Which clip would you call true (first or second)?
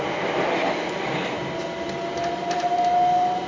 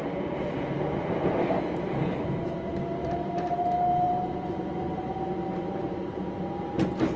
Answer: first